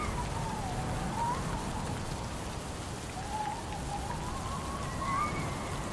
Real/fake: real